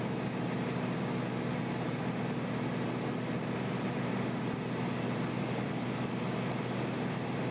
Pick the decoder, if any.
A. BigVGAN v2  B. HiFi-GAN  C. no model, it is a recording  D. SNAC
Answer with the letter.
C